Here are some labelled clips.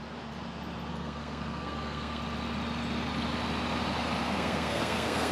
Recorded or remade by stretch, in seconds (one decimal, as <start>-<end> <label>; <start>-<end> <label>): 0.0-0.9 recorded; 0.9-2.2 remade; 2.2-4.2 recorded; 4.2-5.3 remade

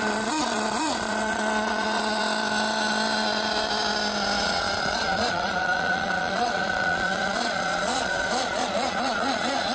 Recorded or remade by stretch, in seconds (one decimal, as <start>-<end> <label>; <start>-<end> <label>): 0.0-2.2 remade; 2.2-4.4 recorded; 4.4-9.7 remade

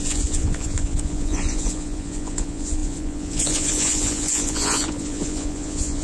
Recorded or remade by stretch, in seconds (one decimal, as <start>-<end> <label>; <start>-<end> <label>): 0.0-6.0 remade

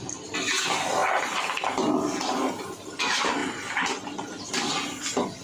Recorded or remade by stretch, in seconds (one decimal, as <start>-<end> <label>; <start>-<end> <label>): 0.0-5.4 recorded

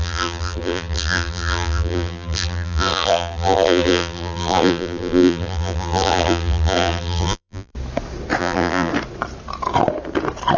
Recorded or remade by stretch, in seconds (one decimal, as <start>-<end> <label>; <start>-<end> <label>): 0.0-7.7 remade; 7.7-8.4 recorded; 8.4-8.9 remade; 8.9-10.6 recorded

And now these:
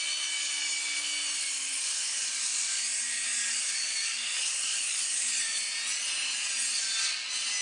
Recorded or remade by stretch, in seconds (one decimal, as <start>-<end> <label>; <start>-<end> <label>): 0.0-1.4 recorded; 1.4-5.6 remade; 5.6-7.6 recorded